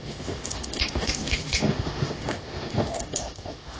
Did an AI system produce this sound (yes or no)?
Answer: yes